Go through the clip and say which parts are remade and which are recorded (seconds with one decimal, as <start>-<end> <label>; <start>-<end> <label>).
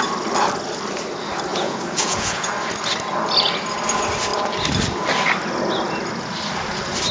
0.0-1.5 recorded; 1.5-2.5 remade; 2.5-7.1 recorded